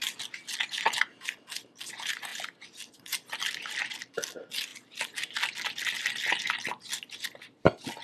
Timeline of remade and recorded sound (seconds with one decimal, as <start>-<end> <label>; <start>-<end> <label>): 0.0-8.0 recorded